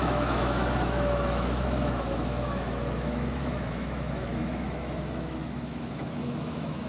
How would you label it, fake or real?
fake